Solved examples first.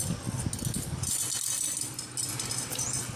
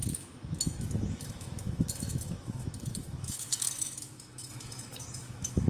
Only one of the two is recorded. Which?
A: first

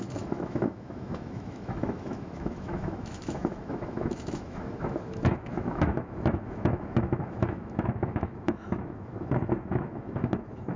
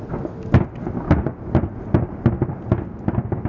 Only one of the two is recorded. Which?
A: second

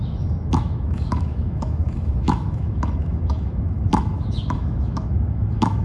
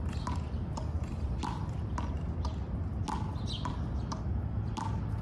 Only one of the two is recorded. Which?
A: second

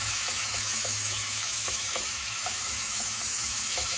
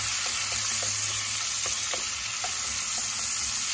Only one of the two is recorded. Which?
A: second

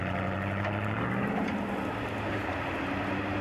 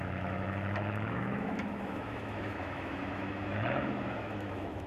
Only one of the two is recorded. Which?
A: first